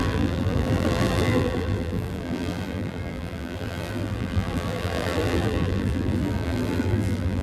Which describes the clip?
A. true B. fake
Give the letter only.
B